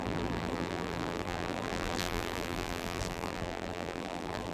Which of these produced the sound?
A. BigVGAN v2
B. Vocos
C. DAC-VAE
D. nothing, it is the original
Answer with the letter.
A